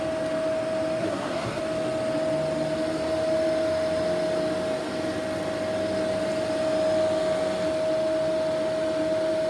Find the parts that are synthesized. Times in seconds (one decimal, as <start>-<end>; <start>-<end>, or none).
1.0-1.6